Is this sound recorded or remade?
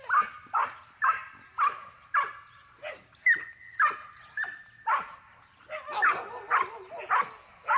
recorded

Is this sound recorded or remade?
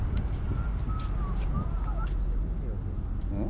recorded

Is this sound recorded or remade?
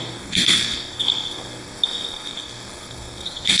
remade